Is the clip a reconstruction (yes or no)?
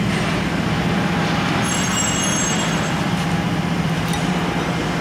yes